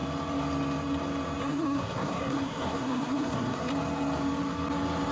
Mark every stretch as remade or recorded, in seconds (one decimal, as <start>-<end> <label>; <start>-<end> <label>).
0.0-1.4 recorded; 1.4-3.7 remade; 3.7-5.1 recorded